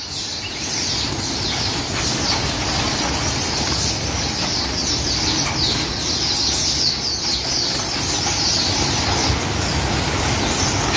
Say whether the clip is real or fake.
real